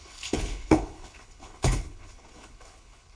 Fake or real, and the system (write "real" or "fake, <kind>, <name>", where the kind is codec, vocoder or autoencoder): fake, codec, HILCodec